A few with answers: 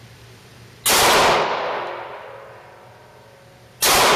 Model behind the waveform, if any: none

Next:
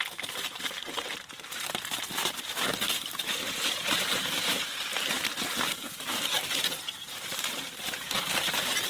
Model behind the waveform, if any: vocoder, BigVGAN v2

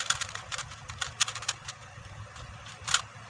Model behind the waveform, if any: none